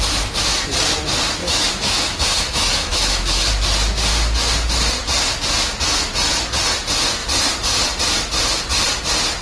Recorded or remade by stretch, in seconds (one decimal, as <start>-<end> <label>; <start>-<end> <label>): 0.0-1.4 recorded; 1.4-3.5 remade; 3.5-9.4 recorded